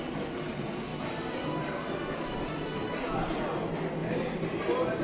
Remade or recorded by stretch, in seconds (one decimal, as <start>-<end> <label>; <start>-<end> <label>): 0.0-5.0 recorded